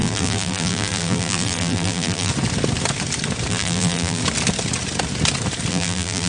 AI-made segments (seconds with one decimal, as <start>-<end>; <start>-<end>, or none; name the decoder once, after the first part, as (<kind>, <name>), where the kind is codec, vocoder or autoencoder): 0.0-2.3 (vocoder, BigVGAN v2); 3.5-4.2; 5.7-6.3